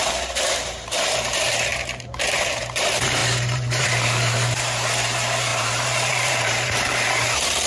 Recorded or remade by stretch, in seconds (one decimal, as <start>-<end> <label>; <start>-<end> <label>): 0.0-7.7 remade

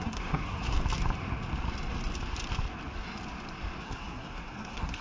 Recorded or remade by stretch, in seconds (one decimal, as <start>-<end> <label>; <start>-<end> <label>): 0.0-0.8 remade; 0.8-3.8 recorded; 3.8-5.0 remade

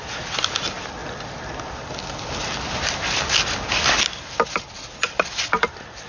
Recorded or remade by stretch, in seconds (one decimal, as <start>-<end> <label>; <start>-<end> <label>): 0.0-6.1 recorded

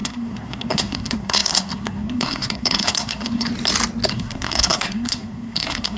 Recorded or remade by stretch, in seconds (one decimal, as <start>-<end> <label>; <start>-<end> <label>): 0.0-3.5 remade; 3.5-4.1 recorded; 4.1-6.0 remade